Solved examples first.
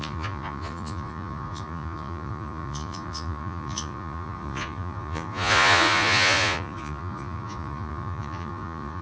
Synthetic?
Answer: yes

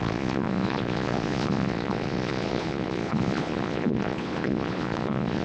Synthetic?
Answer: yes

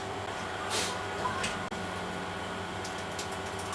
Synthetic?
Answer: no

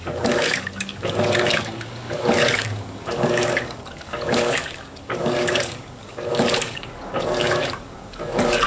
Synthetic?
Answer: yes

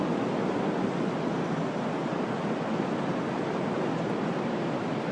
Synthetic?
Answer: no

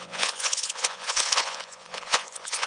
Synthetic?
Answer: yes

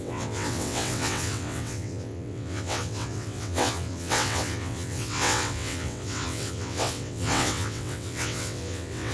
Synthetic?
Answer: yes